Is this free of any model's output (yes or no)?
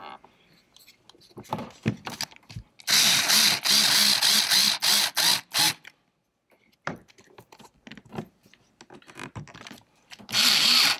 yes